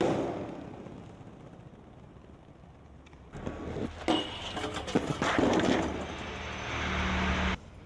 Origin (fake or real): real